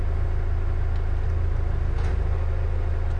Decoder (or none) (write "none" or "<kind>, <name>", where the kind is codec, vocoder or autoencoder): none